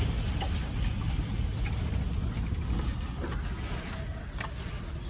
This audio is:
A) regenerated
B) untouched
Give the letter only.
B